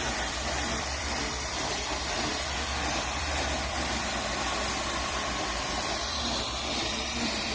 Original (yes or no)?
no